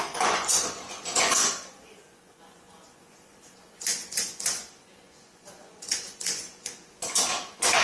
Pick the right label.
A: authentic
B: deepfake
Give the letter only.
B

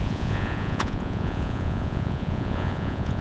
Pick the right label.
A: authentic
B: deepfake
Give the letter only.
B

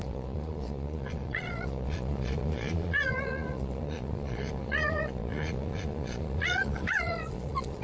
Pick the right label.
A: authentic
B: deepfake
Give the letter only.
B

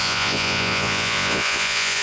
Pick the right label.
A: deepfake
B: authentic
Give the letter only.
A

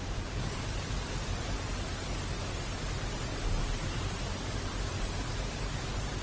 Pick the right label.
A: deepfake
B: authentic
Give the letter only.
B